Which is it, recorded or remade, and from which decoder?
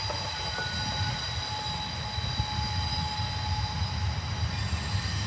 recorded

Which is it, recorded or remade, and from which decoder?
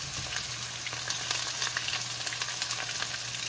recorded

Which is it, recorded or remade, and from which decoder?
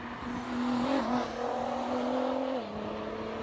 recorded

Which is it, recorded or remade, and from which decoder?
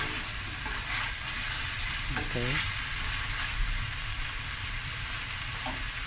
recorded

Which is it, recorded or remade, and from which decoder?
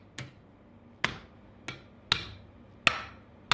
recorded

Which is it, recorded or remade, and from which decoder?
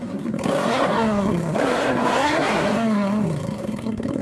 remade, codec, SNAC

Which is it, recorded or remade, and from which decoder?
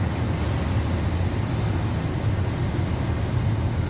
recorded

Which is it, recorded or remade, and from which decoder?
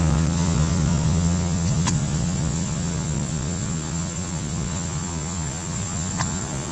remade, vocoder, Vocos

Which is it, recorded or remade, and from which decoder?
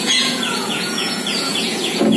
remade, vocoder, Vocos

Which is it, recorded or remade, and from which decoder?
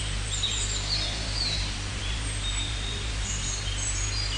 recorded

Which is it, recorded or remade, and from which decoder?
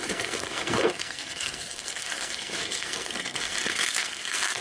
remade, codec, SNAC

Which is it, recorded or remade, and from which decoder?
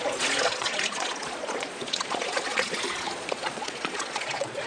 remade, vocoder, Vocos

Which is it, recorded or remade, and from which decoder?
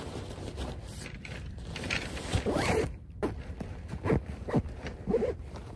remade, vocoder, BigVGAN v2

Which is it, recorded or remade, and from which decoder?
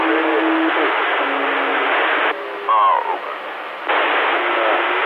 recorded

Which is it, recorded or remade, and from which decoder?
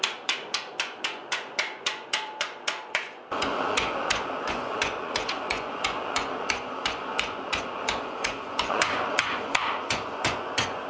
remade, vocoder, Vocos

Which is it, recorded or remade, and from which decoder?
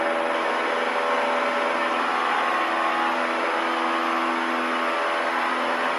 recorded